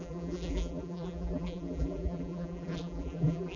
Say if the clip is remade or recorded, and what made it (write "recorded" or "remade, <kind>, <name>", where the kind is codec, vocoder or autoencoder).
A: remade, vocoder, BigVGAN v2